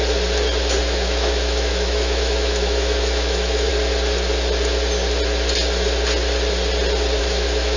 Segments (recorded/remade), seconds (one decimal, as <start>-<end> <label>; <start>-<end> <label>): 0.0-0.8 recorded; 0.8-3.7 remade; 3.7-7.2 recorded; 7.2-7.8 remade